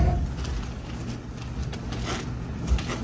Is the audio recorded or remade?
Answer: recorded